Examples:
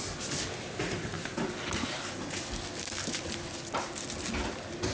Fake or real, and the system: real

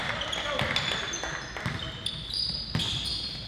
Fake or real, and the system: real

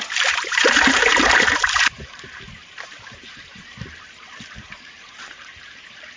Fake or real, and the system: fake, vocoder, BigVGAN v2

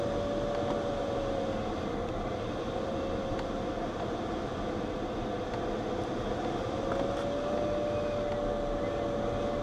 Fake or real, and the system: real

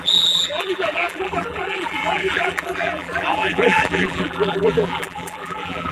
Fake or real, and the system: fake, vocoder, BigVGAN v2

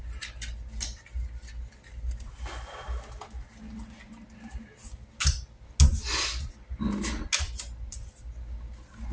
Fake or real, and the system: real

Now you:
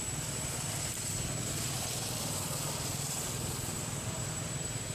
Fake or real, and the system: fake, vocoder, BigVGAN v2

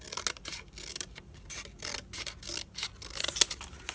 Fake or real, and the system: real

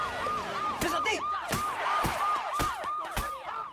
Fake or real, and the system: real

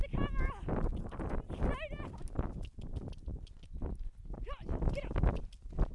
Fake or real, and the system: real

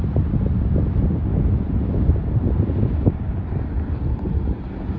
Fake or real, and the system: real